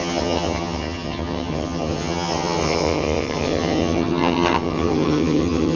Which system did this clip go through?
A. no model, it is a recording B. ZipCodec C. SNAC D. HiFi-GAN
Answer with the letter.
D